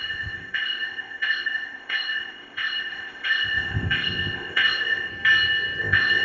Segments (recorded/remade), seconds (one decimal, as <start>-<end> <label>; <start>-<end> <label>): 0.0-5.1 remade; 5.1-5.8 recorded; 5.8-6.2 remade